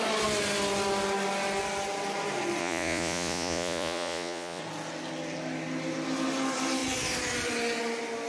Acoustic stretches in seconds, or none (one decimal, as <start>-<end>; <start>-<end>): 0.0-2.6; 4.6-8.3